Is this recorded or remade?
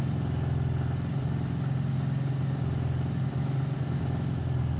recorded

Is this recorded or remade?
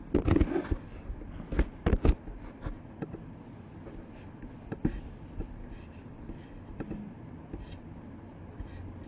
recorded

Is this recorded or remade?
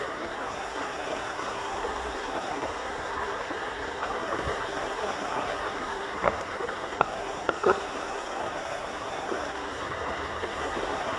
remade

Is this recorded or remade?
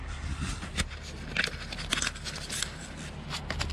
recorded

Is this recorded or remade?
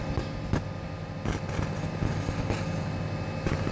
recorded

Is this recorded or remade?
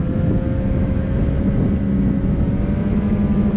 recorded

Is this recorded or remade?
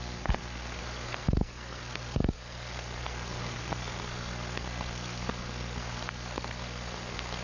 remade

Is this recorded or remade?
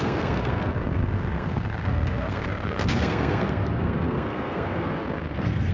remade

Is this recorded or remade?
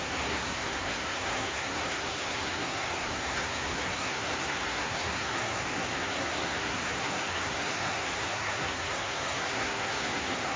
remade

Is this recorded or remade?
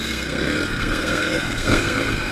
remade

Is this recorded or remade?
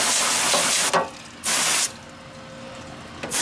recorded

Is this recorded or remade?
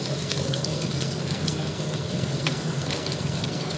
remade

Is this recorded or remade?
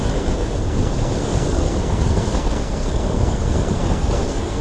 remade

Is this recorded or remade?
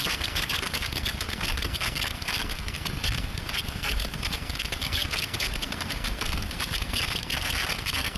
remade